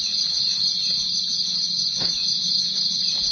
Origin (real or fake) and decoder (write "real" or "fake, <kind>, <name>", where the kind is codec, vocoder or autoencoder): real